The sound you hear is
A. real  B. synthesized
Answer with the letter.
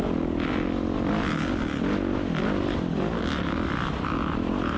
A